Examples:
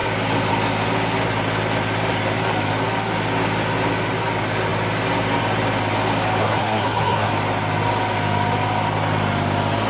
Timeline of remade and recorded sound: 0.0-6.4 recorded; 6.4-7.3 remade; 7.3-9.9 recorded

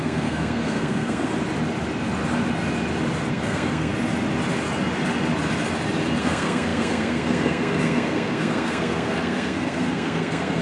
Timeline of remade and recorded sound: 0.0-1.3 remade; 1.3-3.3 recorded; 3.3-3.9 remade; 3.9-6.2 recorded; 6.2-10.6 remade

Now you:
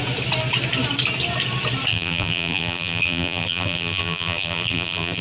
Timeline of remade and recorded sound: 0.0-1.9 recorded; 1.9-5.2 remade

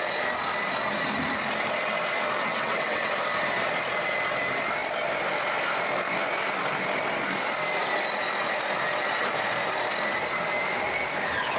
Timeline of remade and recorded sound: 0.0-2.5 recorded; 2.5-3.1 remade; 3.1-11.6 recorded

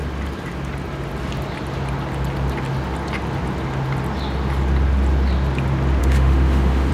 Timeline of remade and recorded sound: 0.0-6.0 recorded; 6.0-6.9 remade

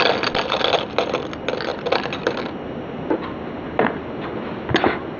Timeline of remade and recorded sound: 0.0-5.2 recorded